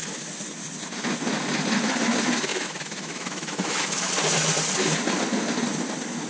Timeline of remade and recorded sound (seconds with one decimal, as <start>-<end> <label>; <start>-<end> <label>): 0.0-2.5 recorded; 2.5-4.1 remade; 4.1-6.3 recorded